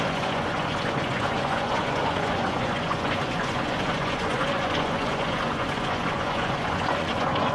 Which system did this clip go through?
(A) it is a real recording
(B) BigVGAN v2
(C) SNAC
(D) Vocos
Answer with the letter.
D